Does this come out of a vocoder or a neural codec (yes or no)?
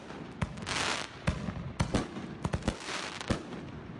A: no